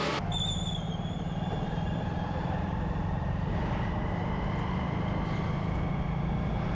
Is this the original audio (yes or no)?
yes